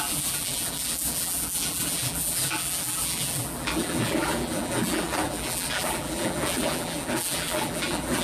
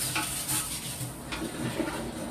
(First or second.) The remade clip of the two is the first